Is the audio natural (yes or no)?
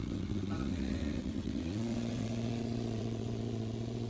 no